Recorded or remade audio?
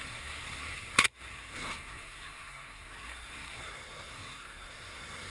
remade